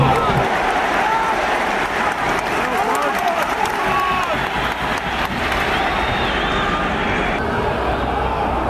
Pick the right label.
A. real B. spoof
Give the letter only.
A